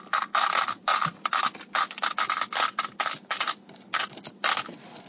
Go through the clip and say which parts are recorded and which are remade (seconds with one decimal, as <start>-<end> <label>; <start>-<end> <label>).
0.0-5.1 recorded